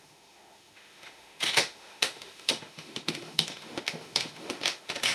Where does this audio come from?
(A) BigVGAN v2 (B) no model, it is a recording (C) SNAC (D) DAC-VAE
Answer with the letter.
D